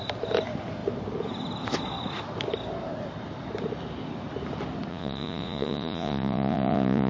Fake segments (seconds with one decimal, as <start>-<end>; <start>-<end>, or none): 4.9-7.1